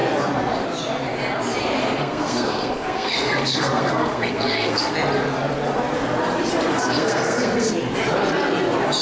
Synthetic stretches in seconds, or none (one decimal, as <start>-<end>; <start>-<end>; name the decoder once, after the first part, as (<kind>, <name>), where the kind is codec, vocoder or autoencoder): 1.8-4.9 (codec, SNAC); 6.7-7.7